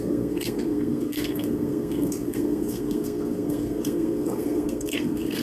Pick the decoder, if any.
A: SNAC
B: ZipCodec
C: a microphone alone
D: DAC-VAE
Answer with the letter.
A